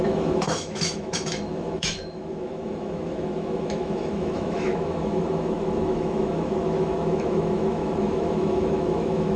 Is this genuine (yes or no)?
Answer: no